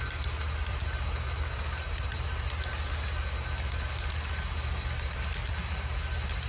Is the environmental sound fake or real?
real